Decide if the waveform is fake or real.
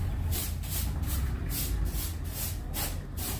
fake